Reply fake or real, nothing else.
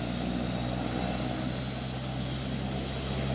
real